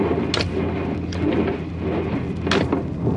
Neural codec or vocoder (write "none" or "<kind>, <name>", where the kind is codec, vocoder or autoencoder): none